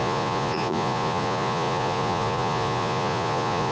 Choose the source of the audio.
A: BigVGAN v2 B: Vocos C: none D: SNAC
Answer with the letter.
B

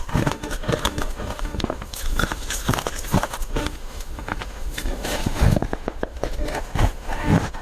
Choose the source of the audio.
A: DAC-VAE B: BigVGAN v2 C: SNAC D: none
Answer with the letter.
A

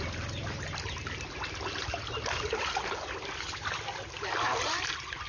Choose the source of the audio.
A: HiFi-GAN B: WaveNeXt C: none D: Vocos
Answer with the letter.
C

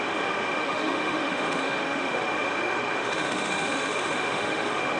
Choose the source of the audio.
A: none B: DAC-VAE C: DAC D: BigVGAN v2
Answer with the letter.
B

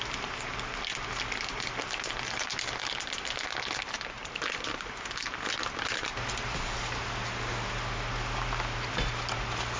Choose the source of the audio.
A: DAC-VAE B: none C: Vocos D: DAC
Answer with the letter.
B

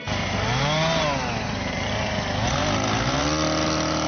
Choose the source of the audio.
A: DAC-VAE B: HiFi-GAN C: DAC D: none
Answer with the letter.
D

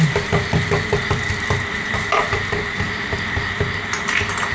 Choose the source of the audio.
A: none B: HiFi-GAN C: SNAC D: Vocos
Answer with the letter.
A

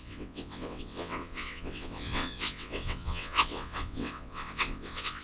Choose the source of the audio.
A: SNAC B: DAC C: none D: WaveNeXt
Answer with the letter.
D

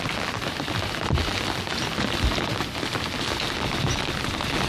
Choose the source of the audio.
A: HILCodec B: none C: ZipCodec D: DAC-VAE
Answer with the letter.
B